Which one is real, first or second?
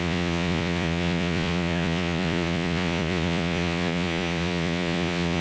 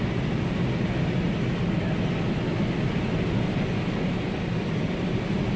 second